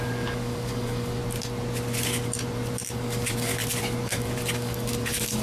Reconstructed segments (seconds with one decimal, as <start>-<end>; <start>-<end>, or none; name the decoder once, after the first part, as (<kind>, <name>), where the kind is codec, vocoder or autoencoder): 0.0-1.2 (codec, DAC); 2.9-3.5; 4.0-5.4